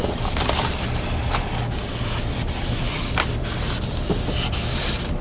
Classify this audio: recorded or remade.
recorded